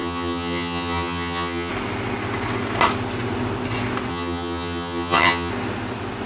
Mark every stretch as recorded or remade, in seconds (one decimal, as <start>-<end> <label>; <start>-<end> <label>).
0.0-1.7 remade; 1.7-4.1 recorded; 4.1-5.5 remade; 5.5-6.3 recorded